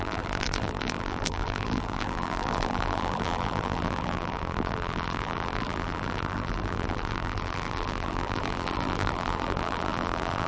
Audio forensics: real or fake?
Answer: fake